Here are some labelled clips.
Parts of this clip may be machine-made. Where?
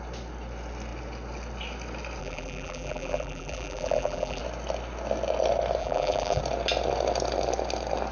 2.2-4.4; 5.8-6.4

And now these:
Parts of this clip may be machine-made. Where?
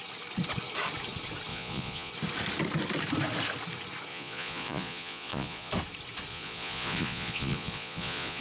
1.5-2.1; 4.1-5.7; 6.3-8.4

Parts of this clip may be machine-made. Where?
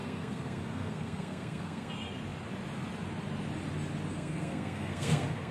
0.0-1.9; 4.1-5.5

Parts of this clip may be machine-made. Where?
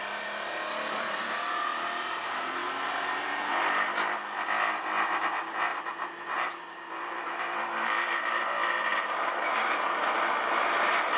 2.2-3.5; 5.7-8.2; 8.9-9.8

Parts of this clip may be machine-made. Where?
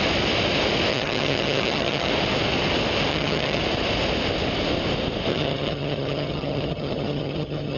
0.9-2.1; 3.1-3.6; 5.3-7.8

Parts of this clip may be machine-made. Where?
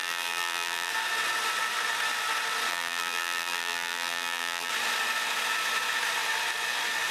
0.0-0.9; 2.7-4.7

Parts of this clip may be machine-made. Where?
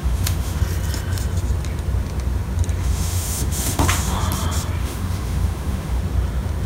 0.0-0.6; 2.8-4.2; 4.8-6.0